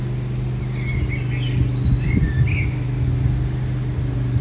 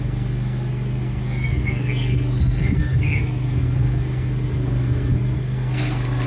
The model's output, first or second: second